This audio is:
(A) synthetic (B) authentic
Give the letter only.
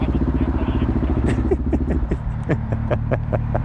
B